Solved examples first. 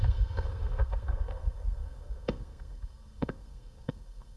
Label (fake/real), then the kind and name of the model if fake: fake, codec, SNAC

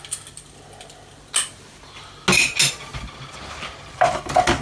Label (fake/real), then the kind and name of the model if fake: real